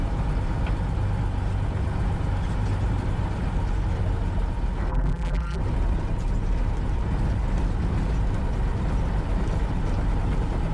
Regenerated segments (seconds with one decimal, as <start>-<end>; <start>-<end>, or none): 4.9-5.6